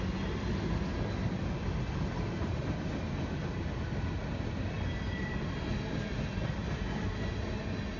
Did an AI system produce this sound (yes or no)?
no